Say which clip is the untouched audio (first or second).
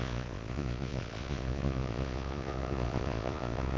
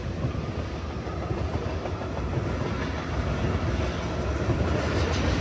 second